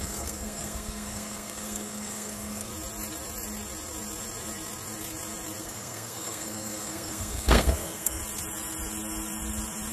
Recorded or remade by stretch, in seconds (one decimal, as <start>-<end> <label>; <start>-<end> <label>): 0.0-2.7 remade; 2.7-5.6 recorded; 5.6-8.2 remade; 8.2-9.9 recorded